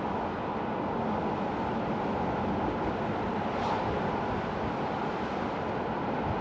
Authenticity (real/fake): real